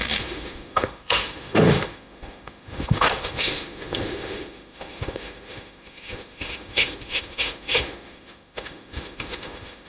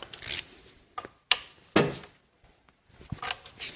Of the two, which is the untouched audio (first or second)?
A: second